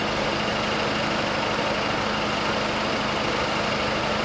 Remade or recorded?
recorded